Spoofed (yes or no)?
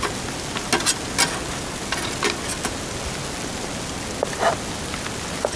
no